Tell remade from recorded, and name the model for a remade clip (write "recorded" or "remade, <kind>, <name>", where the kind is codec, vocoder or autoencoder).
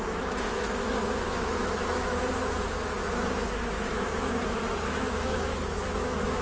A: remade, autoencoder, DAC-VAE